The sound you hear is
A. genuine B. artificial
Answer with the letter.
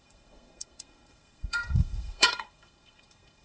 B